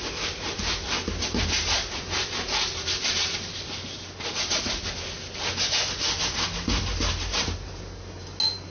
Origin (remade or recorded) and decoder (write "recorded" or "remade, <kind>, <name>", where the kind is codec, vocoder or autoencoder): recorded